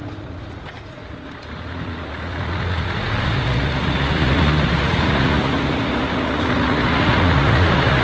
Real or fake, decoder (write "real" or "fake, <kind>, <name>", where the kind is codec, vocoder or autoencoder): fake, vocoder, Vocos